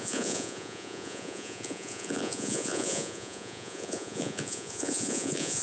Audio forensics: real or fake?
fake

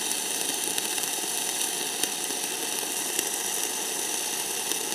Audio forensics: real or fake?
real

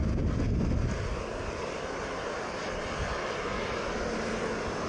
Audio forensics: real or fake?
real